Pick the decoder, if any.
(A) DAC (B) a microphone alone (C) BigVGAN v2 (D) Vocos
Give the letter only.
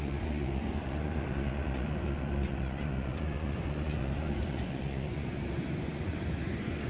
D